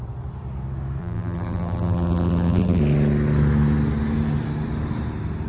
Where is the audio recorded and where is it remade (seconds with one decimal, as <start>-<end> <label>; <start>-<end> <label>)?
0.0-1.0 recorded; 1.0-2.8 remade; 2.8-5.5 recorded